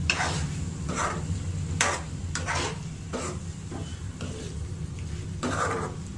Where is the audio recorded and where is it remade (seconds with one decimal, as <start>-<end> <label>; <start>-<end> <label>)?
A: 0.0-1.0 recorded; 1.0-4.7 remade; 4.7-6.2 recorded